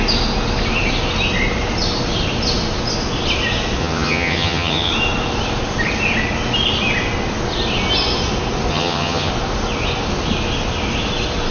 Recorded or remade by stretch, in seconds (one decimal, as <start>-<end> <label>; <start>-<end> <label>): 0.0-3.8 recorded; 3.8-4.9 remade; 4.9-8.7 recorded; 8.7-9.3 remade; 9.3-11.5 recorded